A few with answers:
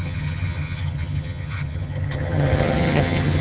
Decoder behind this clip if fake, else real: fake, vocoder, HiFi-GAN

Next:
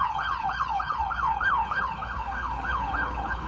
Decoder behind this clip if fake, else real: fake, codec, HILCodec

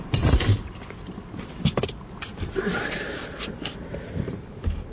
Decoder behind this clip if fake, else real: fake, vocoder, BigVGAN v2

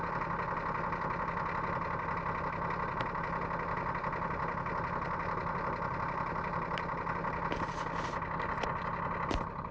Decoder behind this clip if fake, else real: real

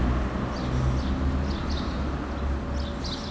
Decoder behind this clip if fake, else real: real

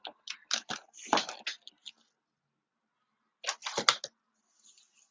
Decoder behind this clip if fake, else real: real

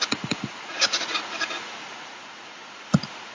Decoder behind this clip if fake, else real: fake, vocoder, Vocos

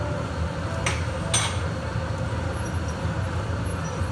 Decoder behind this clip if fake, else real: real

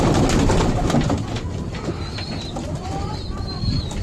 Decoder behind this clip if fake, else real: real